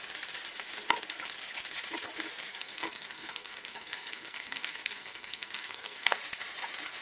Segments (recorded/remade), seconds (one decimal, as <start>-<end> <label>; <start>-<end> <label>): 0.0-2.5 recorded; 2.5-6.2 remade; 6.2-7.0 recorded